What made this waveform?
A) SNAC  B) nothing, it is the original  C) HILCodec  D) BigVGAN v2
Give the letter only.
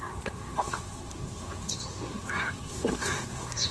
A